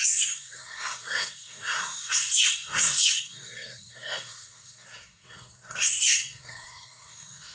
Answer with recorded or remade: remade